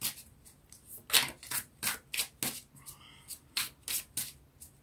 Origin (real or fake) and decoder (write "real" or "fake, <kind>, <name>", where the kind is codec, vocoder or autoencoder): real